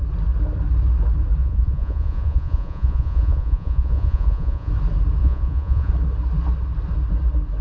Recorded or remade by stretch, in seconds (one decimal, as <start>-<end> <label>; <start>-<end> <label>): 0.0-1.4 recorded; 1.4-4.7 remade; 4.7-5.2 recorded; 5.2-5.9 remade; 5.9-7.6 recorded